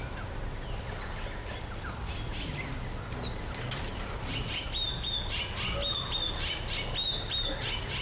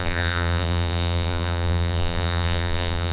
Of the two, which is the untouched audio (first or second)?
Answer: first